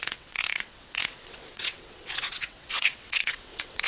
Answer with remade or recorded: remade